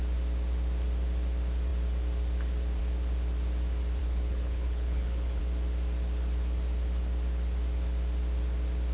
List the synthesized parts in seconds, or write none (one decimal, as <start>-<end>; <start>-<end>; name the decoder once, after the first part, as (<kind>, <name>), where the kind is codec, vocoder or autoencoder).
4.0-5.4 (codec, HILCodec)